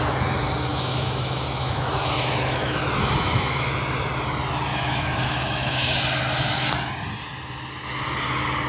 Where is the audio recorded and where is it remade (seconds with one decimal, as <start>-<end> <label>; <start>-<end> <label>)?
0.0-0.7 recorded; 0.7-3.7 remade; 3.7-4.7 recorded; 4.7-6.0 remade; 6.0-8.7 recorded

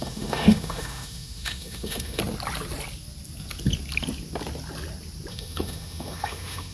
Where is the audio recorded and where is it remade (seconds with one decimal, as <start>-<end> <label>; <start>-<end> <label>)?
0.0-2.2 remade; 2.2-5.3 recorded; 5.3-6.7 remade